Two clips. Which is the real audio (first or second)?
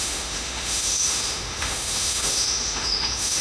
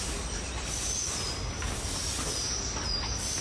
second